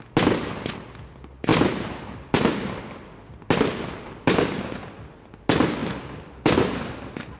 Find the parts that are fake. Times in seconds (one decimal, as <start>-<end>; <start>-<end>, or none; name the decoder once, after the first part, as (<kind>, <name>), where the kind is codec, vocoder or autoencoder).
none